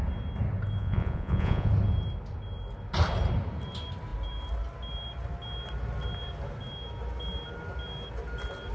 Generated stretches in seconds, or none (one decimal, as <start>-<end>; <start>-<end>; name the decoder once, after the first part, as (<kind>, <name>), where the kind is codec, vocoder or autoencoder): 0.8-1.7 (vocoder, Vocos)